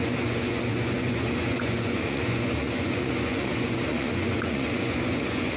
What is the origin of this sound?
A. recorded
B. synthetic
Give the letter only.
B